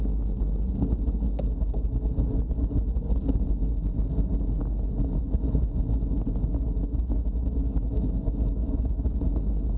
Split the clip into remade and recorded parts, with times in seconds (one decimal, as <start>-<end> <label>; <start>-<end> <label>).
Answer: 0.0-7.4 recorded; 7.4-9.3 remade; 9.3-9.8 recorded